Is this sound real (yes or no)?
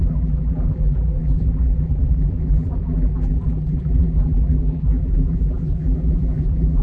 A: no